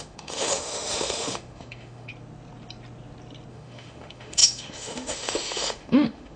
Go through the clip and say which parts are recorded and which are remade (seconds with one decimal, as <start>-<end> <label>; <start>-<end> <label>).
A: 0.0-2.1 remade; 2.1-3.5 recorded; 3.5-6.4 remade